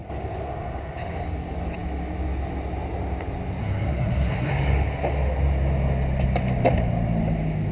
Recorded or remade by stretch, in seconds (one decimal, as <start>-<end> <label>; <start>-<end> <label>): 0.0-3.6 recorded; 3.6-4.5 remade; 4.5-7.7 recorded